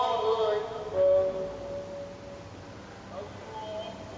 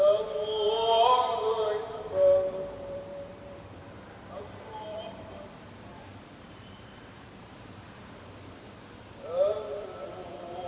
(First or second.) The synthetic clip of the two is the second